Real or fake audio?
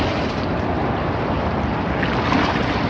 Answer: real